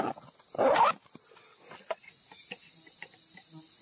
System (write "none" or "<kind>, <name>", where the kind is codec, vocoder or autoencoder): none